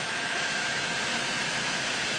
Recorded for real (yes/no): no